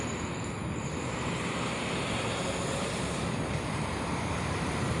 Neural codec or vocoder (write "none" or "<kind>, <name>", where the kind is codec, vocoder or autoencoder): vocoder, BigVGAN v2